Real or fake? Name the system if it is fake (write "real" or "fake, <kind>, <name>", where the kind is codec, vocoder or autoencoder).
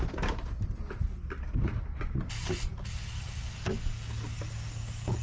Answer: real